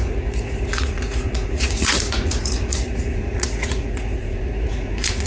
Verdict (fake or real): fake